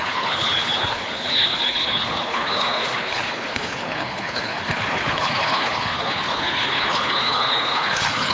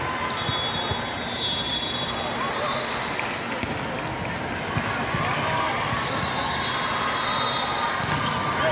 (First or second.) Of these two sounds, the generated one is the first